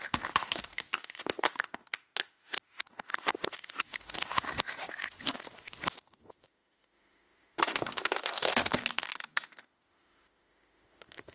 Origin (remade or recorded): remade